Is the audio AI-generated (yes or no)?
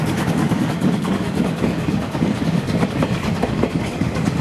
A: yes